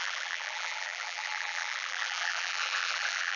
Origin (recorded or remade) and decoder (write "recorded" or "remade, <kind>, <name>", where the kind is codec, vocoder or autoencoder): remade, vocoder, BigVGAN v2